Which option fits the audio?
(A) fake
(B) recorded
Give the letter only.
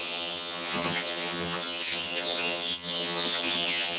A